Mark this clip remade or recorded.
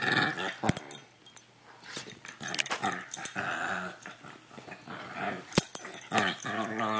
recorded